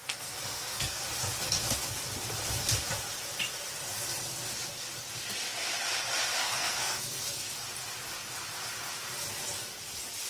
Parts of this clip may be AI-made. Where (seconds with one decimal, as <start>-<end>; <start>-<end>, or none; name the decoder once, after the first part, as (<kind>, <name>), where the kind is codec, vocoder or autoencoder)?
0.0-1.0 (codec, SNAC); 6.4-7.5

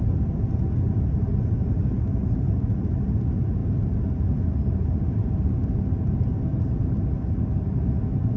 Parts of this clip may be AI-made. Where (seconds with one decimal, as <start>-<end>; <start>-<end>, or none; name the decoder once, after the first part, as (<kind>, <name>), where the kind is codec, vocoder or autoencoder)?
none

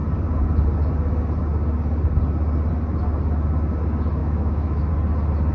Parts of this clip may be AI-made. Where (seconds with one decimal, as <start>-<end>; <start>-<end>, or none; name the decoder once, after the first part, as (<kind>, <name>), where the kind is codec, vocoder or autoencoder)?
4.2-4.9 (autoencoder, DAC-VAE)

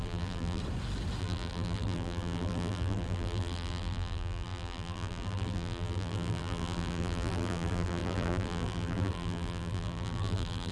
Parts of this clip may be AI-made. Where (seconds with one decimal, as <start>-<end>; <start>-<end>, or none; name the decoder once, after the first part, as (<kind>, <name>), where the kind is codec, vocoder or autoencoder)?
0.0-0.6 (vocoder, BigVGAN v2); 1.2-10.7